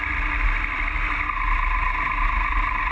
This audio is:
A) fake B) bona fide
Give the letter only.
B